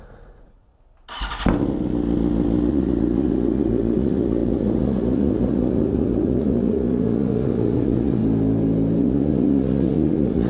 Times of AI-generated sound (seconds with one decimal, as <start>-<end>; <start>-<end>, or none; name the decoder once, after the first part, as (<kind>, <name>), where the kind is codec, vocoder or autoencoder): 0.0-0.7 (vocoder, Vocos); 2.7-8.2; 9.0-10.5

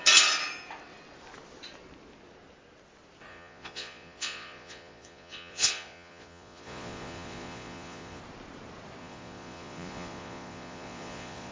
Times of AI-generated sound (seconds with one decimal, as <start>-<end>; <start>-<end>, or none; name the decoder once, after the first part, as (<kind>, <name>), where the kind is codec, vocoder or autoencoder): 3.3-8.2 (vocoder, Vocos); 9.0-11.5

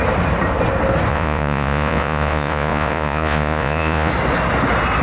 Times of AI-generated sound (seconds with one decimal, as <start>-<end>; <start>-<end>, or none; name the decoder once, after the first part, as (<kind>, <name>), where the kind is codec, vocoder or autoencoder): 1.1-4.1 (vocoder, Vocos)

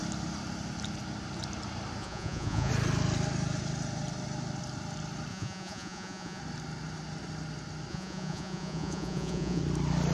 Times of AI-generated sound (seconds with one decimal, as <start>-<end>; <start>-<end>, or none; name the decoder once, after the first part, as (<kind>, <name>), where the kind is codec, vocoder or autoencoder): 2.0-2.7 (vocoder, Vocos); 5.3-6.4; 7.9-9.6

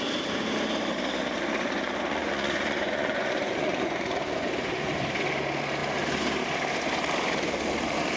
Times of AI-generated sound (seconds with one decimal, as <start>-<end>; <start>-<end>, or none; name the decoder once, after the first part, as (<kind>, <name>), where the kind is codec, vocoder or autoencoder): 2.1-4.9 (vocoder, Vocos)